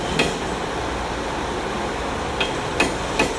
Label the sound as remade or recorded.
recorded